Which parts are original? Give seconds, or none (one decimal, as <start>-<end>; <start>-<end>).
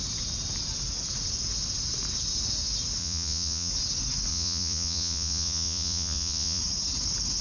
0.0-3.0; 3.7-4.3; 6.6-7.4